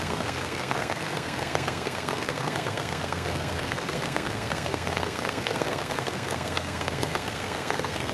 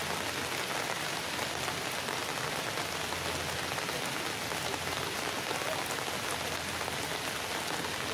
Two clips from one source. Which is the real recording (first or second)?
second